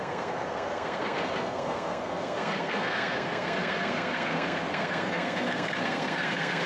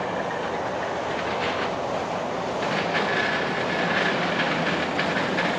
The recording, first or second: second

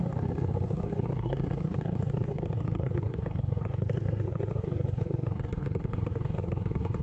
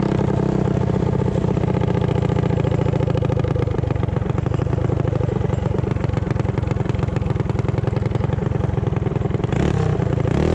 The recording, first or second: second